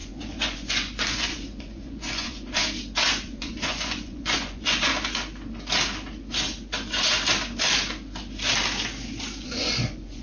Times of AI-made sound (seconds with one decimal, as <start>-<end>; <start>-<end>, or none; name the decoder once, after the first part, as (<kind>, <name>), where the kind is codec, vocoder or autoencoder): 0.0-2.6 (vocoder, Vocos); 3.2-4.9; 9.4-10.2